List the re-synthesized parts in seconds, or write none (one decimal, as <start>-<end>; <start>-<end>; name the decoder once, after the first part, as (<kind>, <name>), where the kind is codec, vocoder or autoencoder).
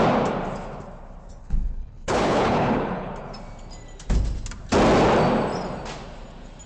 1.4-3.1 (codec, HILCodec)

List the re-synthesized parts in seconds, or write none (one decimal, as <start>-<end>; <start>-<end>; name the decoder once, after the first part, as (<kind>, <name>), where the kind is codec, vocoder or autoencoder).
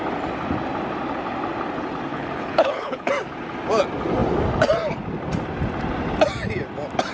2.1-3.1 (codec, HILCodec)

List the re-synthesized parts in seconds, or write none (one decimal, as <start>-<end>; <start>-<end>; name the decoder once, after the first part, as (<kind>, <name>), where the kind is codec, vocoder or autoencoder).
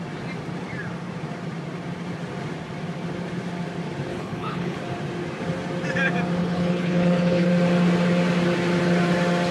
4.1-4.8 (codec, HILCodec); 6.4-7.5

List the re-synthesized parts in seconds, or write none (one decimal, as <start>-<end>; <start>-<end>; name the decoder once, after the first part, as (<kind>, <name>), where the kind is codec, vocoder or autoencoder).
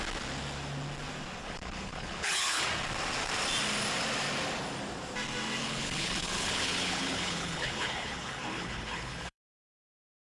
1.4-2.7 (codec, HILCodec); 5.6-10.2